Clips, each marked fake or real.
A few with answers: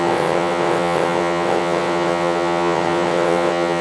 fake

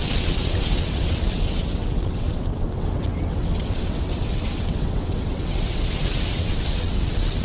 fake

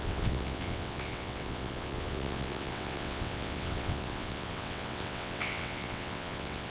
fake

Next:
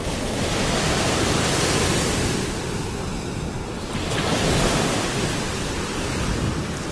real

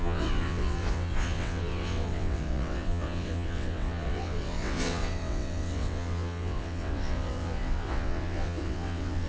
fake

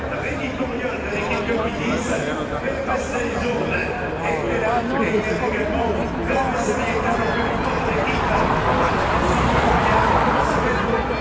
real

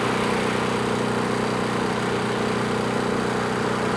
real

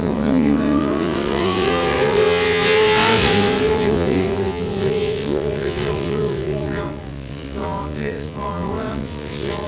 fake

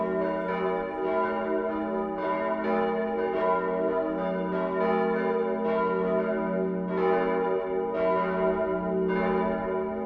real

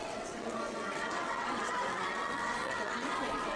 fake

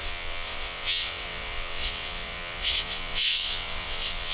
fake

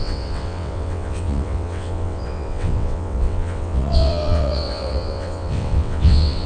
fake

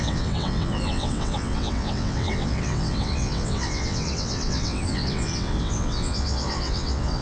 fake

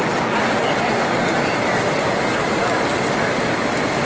real